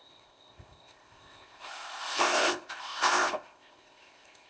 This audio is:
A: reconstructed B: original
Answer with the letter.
A